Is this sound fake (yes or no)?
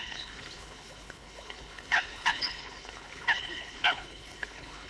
yes